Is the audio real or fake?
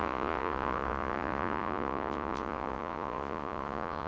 fake